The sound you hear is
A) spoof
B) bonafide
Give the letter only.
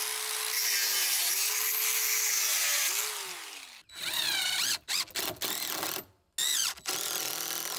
B